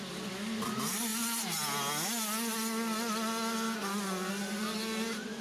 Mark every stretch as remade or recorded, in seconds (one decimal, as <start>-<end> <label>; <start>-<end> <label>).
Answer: 0.0-1.1 remade; 1.1-4.3 recorded; 4.3-4.8 remade; 4.8-5.4 recorded